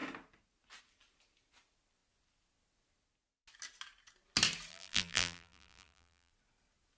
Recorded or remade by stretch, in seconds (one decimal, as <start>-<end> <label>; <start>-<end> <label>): 0.0-4.7 recorded; 4.7-6.3 remade; 6.3-7.0 recorded

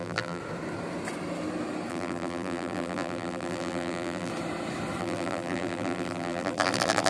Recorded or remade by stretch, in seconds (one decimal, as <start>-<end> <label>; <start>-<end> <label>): 0.0-0.4 remade; 0.4-1.9 recorded; 1.9-4.3 remade; 4.3-5.0 recorded; 5.0-7.1 remade

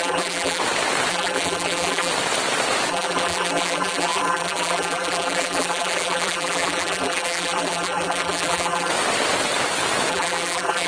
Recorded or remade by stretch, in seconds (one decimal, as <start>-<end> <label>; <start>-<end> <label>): 0.0-0.6 remade; 0.6-1.1 recorded; 1.1-2.1 remade; 2.1-2.9 recorded; 2.9-8.9 remade; 8.9-10.1 recorded; 10.1-10.9 remade

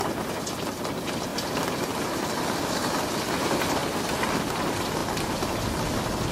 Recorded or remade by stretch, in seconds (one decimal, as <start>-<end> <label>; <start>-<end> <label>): 0.0-1.3 recorded; 1.3-1.8 remade; 1.8-6.3 recorded

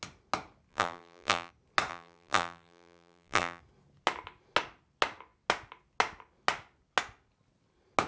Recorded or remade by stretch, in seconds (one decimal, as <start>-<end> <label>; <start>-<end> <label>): 0.0-0.7 recorded; 0.7-1.5 remade; 1.5-1.9 recorded; 1.9-3.6 remade; 3.6-8.1 recorded